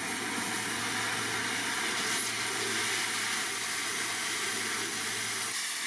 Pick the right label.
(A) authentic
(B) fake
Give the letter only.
A